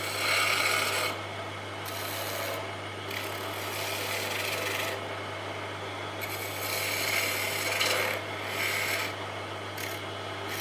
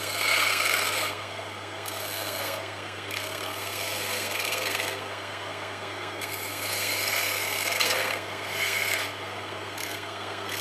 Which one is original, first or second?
first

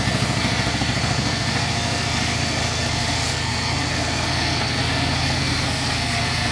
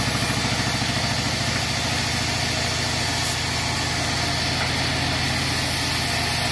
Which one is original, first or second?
second